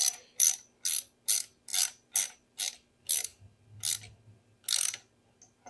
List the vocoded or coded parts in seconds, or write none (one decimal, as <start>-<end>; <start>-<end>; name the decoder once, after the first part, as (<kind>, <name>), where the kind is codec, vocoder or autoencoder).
none

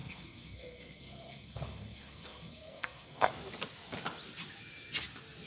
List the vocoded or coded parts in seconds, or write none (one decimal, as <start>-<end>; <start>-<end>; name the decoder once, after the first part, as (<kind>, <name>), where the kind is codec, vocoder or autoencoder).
0.0-3.3 (codec, SNAC)

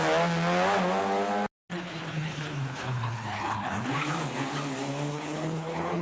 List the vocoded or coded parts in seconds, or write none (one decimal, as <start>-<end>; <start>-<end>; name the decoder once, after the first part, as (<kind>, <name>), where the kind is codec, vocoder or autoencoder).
1.7-3.9 (codec, HILCodec); 5.1-6.0

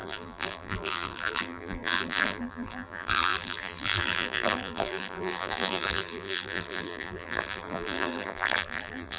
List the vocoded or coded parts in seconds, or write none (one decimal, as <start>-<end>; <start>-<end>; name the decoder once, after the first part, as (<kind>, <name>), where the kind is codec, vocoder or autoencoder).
0.0-9.2 (vocoder, BigVGAN v2)

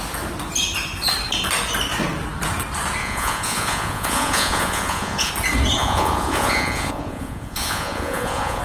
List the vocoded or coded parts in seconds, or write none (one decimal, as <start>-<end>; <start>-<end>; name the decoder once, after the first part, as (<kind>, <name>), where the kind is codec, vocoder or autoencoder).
3.0-5.3 (vocoder, Vocos); 5.8-8.6

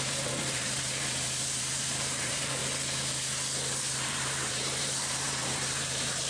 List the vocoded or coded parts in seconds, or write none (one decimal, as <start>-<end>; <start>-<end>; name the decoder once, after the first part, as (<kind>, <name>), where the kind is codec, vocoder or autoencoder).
0.0-2.6 (vocoder, BigVGAN v2); 3.8-6.3